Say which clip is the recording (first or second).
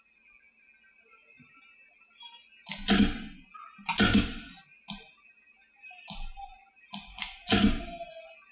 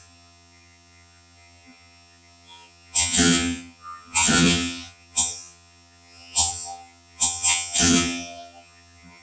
first